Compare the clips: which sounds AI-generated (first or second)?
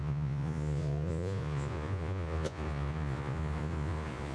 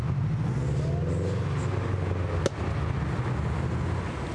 first